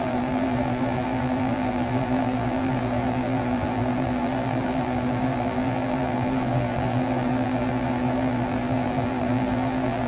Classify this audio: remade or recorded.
remade